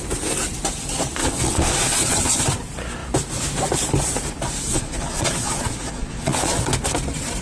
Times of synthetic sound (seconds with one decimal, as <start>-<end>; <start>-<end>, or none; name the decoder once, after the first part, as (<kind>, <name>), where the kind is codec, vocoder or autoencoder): 1.2-2.4 (vocoder, Vocos); 4.7-6.7